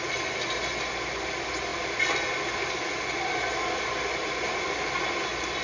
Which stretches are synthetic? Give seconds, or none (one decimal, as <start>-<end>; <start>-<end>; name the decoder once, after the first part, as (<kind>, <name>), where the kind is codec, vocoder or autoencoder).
none